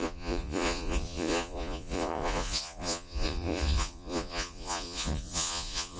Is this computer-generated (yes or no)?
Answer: yes